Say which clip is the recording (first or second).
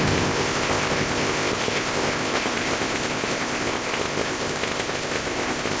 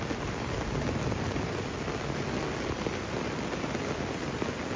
second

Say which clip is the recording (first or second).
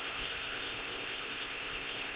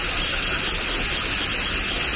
second